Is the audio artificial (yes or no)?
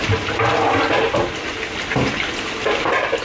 no